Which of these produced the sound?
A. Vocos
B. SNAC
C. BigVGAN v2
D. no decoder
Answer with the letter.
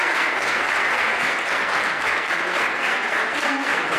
B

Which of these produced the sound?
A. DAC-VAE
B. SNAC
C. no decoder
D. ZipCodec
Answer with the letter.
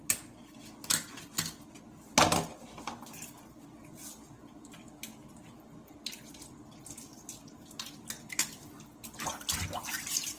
C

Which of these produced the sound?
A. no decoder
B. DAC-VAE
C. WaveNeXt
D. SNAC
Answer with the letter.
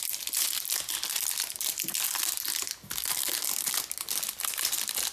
A